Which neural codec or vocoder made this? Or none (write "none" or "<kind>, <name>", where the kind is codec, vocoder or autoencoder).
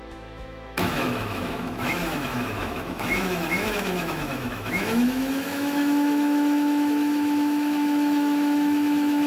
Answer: autoencoder, DAC-VAE